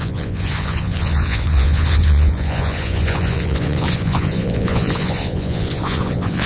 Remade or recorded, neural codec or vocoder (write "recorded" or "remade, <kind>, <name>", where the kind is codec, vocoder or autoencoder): remade, vocoder, Vocos